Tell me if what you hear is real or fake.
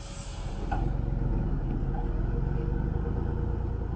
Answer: real